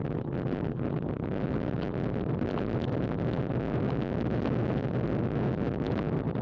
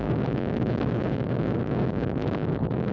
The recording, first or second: first